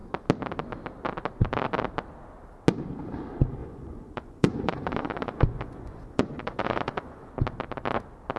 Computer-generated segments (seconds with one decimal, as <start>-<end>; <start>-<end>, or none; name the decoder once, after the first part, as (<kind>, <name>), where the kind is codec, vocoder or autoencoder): 3.6-7.3 (vocoder, Vocos)